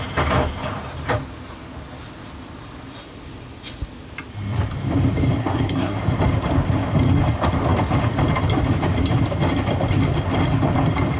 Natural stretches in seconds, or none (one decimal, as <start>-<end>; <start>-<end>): 0.0-5.4; 6.0-11.2